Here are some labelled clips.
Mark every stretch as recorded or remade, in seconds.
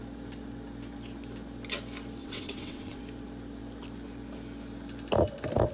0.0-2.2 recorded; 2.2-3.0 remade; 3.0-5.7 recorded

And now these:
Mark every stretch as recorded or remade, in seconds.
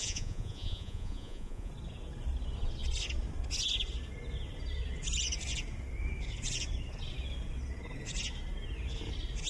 0.0-1.7 remade; 1.7-9.5 recorded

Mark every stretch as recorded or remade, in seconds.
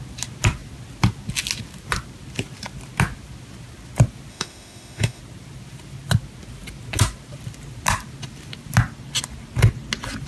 0.0-4.3 recorded; 4.3-5.2 remade; 5.2-10.3 recorded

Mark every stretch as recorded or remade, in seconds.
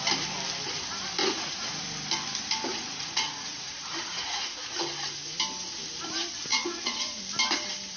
0.0-1.2 recorded; 1.2-1.8 remade; 1.8-2.7 recorded; 2.7-4.8 remade; 4.8-6.5 recorded; 6.5-7.2 remade; 7.2-8.0 recorded